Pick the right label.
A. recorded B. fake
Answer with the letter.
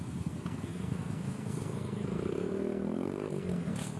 B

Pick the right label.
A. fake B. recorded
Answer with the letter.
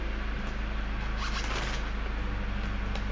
B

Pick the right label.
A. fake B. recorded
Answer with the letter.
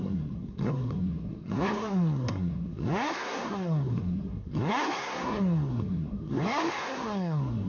A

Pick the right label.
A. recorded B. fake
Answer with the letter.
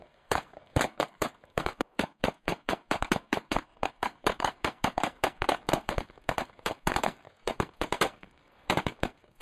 B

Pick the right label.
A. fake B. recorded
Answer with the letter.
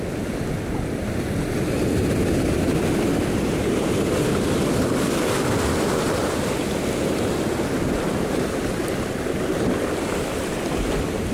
B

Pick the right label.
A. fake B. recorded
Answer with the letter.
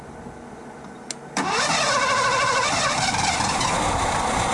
B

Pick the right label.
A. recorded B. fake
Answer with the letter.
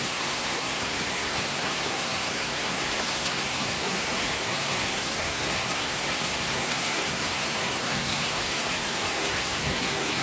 B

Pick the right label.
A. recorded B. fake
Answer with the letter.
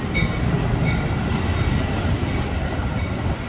A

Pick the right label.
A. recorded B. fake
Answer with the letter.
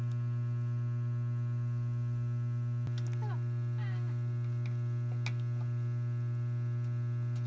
A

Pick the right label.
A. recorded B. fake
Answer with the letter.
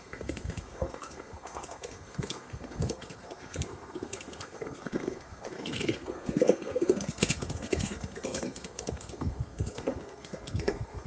B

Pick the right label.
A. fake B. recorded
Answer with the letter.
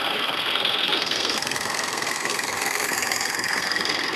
A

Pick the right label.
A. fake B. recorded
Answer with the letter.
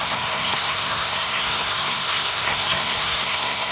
A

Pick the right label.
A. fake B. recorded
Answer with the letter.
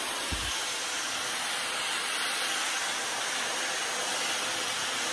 B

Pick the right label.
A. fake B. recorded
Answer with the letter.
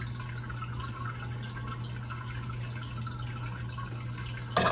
B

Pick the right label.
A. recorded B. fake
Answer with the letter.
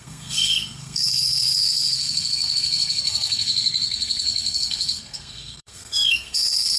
B